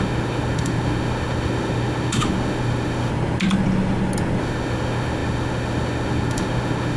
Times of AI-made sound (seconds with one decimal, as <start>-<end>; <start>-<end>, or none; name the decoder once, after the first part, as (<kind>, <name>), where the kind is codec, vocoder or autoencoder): 0.0-3.1 (autoencoder, DAC-VAE); 4.4-7.0